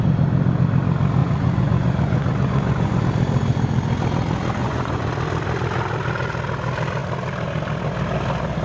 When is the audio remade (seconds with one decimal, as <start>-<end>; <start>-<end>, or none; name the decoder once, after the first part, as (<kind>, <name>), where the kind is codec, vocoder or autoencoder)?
1.2-3.0 (vocoder, Vocos); 4.6-5.1